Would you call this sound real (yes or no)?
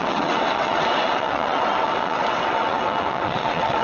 no